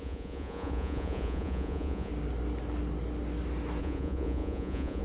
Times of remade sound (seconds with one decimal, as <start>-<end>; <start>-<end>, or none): 0.0-2.1; 3.8-5.0